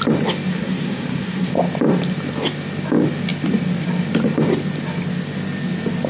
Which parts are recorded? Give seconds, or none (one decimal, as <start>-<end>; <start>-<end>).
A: 0.0-0.5; 1.5-6.1